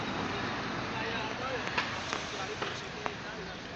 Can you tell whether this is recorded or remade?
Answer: recorded